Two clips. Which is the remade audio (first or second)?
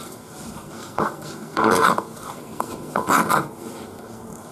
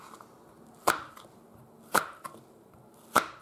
first